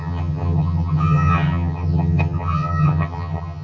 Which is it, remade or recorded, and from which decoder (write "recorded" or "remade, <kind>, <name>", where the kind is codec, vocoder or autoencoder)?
remade, vocoder, HiFi-GAN